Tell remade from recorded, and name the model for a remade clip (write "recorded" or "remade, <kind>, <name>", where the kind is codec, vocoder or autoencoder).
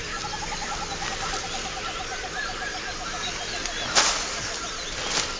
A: recorded